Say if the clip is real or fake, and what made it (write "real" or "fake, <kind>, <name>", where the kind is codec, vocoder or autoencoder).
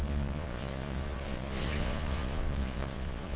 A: fake, vocoder, Vocos